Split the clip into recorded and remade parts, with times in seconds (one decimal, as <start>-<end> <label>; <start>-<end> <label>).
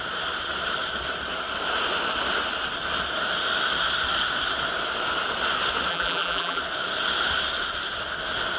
0.0-5.9 recorded; 5.9-6.6 remade; 6.6-8.6 recorded